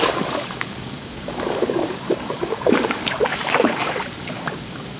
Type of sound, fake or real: fake